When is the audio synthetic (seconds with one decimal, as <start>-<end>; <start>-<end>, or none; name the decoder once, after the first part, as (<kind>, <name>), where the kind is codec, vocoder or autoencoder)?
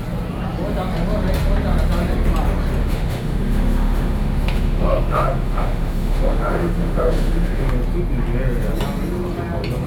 2.8-7.7 (autoencoder, DAC-VAE)